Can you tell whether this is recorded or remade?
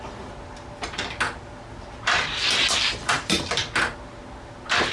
recorded